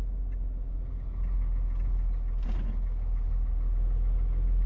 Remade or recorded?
recorded